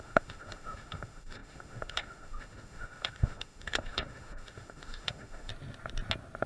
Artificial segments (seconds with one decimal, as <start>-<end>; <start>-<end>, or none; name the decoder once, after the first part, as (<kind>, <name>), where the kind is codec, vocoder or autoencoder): 0.0-5.5 (autoencoder, DAC-VAE)